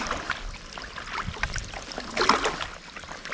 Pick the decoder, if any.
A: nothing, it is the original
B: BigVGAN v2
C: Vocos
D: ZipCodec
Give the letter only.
A